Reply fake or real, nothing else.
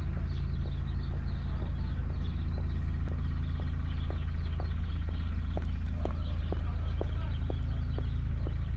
real